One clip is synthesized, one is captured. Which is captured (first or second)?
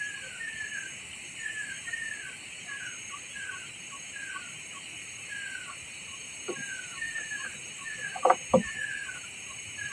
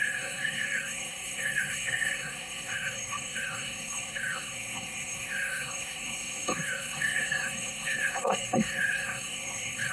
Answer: first